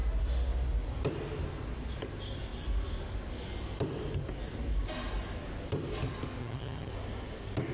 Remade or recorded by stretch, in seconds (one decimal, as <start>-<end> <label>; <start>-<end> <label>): 0.0-6.4 recorded; 6.4-6.9 remade; 6.9-7.7 recorded